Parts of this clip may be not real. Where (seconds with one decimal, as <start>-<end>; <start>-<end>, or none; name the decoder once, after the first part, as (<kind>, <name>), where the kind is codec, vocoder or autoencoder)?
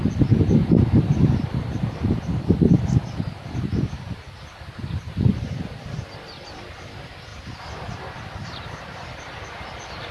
none